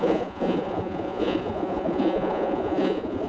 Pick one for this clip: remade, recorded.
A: remade